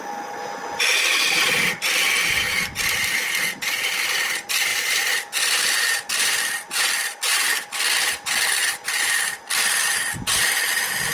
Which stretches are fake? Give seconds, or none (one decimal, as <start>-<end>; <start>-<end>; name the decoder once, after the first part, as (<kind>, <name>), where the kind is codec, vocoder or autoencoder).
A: none